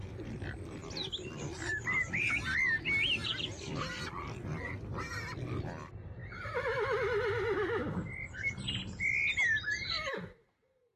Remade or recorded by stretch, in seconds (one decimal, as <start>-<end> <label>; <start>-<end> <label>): 0.0-11.0 recorded